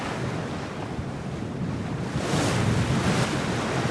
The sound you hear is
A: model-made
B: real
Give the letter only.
B